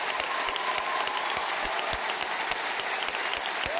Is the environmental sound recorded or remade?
recorded